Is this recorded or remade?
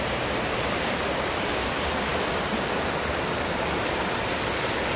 recorded